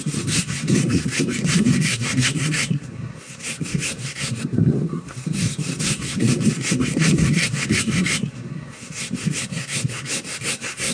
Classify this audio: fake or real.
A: fake